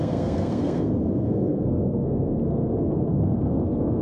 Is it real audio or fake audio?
fake